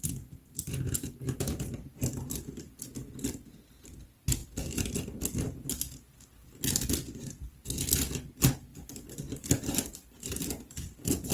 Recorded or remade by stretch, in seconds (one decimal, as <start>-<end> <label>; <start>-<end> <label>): 0.0-8.7 recorded; 8.7-11.3 remade